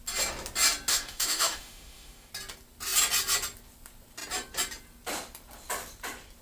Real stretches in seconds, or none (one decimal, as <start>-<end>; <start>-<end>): 0.0-0.9; 2.3-6.4